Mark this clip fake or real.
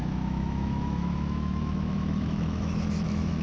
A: fake